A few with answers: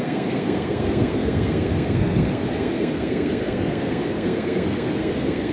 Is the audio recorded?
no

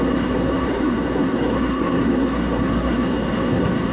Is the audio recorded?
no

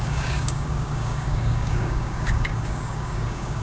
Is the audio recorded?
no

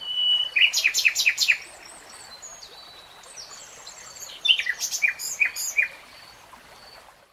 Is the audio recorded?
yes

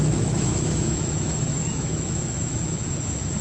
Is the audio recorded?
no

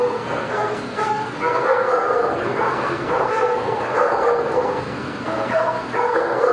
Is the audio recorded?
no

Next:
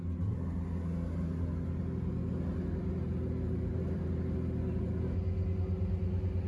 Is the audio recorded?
yes